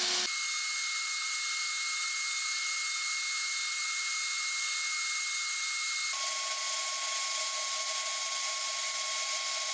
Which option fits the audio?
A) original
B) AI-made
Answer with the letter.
A